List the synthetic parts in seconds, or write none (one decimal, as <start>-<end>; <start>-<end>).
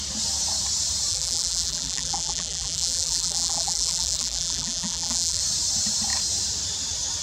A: 1.1-5.4